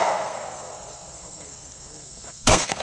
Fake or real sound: fake